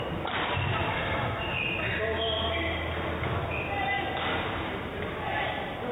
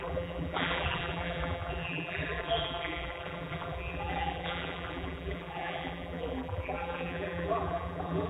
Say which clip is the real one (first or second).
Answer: first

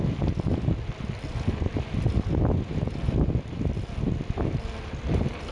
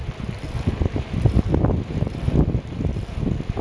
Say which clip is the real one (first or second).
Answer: first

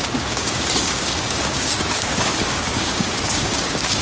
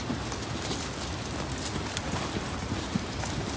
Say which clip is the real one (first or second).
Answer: second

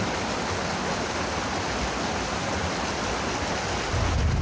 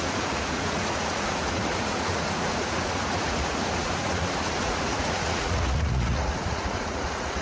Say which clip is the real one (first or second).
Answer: first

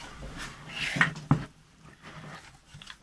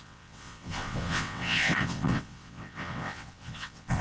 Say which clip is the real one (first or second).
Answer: first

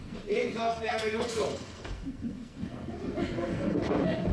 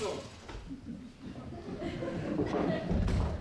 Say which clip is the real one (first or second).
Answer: second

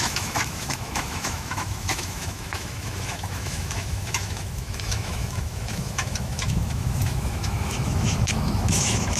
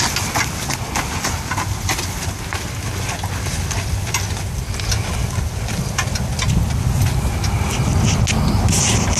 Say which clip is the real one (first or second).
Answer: second